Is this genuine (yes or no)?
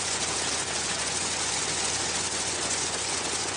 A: no